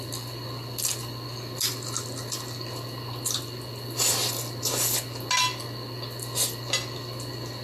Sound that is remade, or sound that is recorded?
recorded